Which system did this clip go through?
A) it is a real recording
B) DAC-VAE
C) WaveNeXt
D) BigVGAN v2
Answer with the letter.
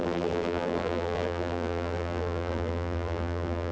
D